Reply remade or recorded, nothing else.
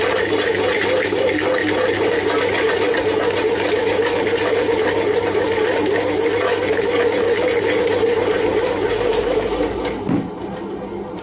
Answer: recorded